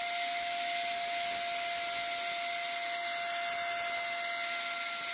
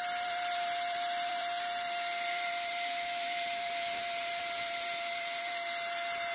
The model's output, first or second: second